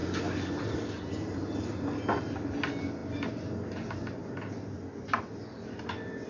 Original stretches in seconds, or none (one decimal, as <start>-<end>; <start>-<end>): 0.0-6.3